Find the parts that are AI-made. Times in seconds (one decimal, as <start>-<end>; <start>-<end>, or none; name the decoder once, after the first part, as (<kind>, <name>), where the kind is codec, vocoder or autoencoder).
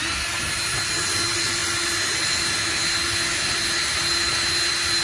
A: none